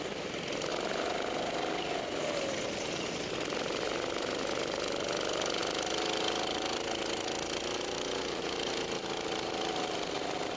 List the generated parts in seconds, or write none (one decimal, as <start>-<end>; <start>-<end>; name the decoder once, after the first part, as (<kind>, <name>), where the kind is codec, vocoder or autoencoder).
none